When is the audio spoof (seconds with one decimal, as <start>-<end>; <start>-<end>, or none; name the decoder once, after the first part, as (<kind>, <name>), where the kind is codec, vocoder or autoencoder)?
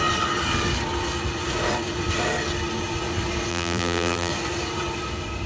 3.5-4.3 (vocoder, BigVGAN v2)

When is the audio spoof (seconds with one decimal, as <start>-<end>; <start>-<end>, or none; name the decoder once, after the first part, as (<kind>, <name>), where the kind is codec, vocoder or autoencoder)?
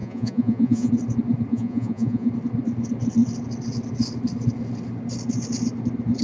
0.0-0.9 (vocoder, Vocos); 1.5-2.3